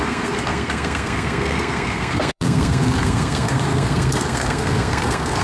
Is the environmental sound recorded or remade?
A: remade